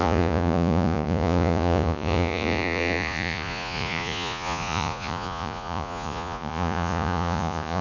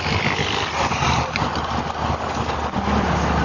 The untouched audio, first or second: second